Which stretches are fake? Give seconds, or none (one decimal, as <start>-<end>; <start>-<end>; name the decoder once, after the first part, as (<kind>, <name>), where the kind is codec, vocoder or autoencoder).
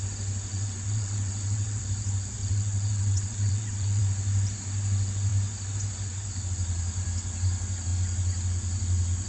0.5-1.8 (vocoder, WaveNeXt); 2.4-4.0